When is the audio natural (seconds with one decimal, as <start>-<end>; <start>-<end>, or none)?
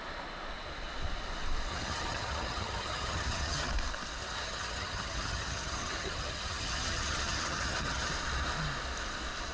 0.0-1.7; 3.7-4.2; 8.1-9.5